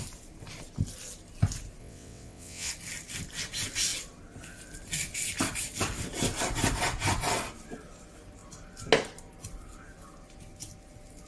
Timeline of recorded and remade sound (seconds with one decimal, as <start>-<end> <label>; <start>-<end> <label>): 0.0-1.8 recorded; 1.8-2.7 remade; 2.7-11.3 recorded